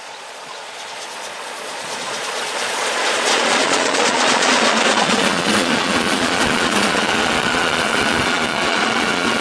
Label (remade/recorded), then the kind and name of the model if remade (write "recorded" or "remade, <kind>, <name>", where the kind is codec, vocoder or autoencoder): remade, vocoder, Vocos